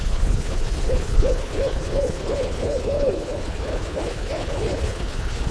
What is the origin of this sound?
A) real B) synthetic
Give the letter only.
B